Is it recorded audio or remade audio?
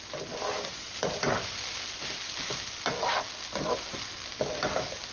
recorded